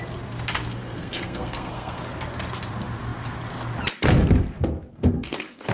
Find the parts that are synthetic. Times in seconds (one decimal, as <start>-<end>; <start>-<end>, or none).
0.7-2.0; 4.9-5.7